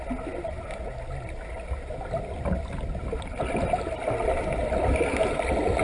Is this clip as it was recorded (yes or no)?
yes